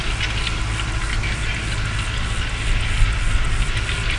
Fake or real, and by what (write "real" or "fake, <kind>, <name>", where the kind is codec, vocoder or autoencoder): real